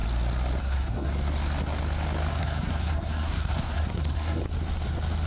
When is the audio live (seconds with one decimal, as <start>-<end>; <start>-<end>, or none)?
0.0-0.6; 1.1-2.3; 4.4-5.3